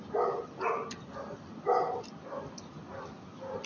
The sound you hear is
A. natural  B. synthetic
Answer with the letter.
A